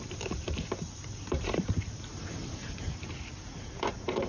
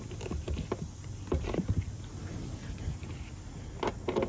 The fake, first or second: first